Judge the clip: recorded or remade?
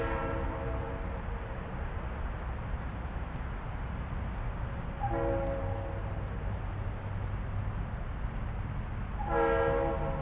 recorded